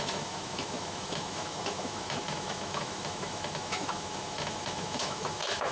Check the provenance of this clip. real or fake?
fake